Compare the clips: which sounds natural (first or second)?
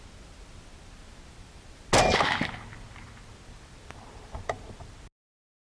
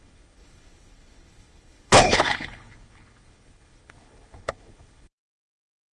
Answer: first